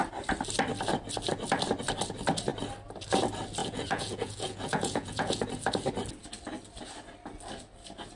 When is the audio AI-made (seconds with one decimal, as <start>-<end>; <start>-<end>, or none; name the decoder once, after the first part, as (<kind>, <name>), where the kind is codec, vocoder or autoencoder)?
3.6-5.4 (vocoder, Vocos)